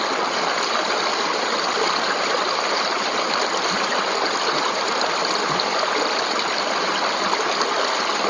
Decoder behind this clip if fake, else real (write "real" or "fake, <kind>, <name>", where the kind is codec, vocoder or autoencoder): real